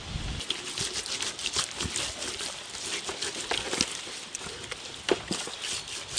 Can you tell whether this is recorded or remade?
recorded